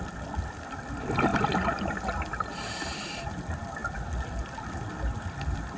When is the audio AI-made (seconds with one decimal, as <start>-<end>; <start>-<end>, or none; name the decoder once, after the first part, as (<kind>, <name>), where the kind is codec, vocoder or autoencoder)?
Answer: none